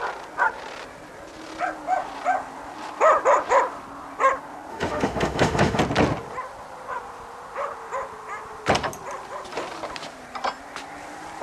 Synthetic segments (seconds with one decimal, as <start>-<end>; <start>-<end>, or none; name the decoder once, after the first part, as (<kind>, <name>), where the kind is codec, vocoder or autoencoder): 4.7-5.8 (autoencoder, DAC-VAE)